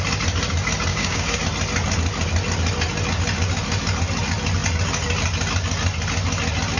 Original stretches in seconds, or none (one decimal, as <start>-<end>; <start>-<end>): 0.0-0.9; 1.4-6.8